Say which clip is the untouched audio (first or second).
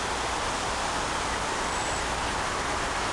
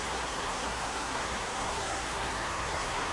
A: first